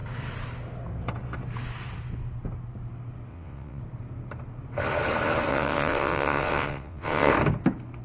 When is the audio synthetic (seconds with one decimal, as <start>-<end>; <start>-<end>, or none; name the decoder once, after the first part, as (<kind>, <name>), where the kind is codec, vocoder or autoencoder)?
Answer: 3.3-3.8 (vocoder, WaveNeXt); 5.5-7.3